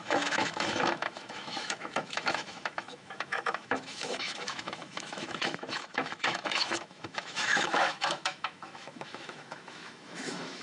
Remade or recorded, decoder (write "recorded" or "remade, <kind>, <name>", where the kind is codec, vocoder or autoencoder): remade, autoencoder, DAC-VAE